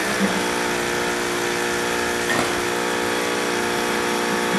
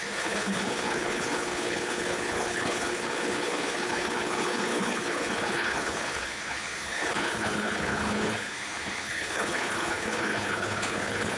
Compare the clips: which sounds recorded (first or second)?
first